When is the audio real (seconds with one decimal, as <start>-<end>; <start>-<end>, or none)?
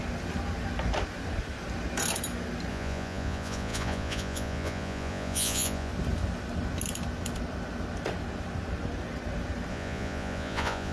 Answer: 0.0-2.7; 5.9-9.7